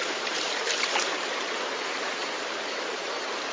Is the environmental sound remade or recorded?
remade